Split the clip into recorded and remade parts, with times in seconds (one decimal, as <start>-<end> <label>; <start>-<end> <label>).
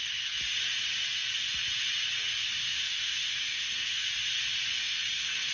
0.0-2.6 recorded; 2.6-4.1 remade; 4.1-4.7 recorded; 4.7-5.5 remade